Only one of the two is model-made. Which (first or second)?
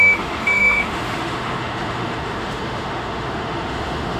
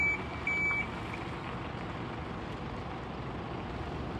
first